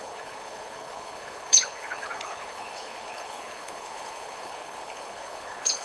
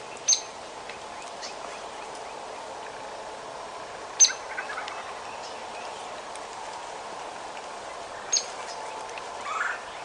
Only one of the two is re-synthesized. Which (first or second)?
first